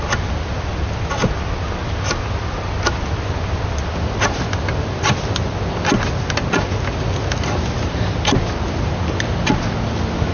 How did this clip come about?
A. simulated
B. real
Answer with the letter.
B